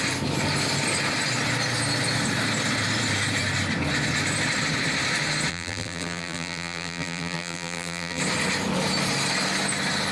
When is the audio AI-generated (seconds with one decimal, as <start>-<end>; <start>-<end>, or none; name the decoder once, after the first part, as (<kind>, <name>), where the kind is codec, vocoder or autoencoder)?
5.5-8.2 (vocoder, BigVGAN v2)